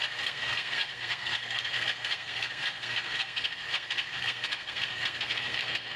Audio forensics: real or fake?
fake